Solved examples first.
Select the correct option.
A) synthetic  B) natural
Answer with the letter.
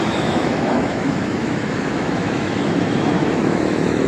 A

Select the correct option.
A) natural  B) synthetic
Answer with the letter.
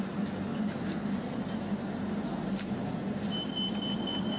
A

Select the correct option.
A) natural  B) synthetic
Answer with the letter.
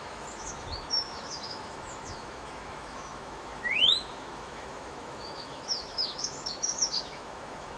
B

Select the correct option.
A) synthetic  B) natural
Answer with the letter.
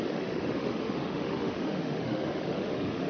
A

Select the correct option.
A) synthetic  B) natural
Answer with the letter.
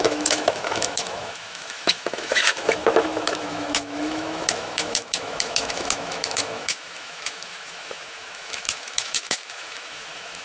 A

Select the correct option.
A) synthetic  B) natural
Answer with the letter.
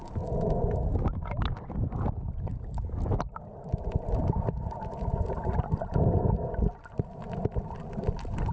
B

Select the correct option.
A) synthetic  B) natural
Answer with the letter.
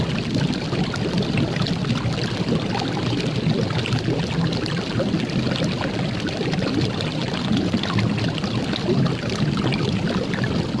B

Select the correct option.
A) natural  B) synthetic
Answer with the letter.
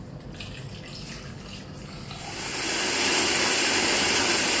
A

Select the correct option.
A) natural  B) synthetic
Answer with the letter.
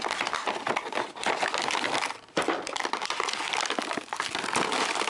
A